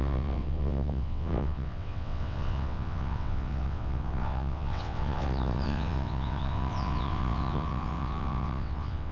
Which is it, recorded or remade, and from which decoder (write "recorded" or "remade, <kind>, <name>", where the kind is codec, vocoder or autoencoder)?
remade, vocoder, WaveNeXt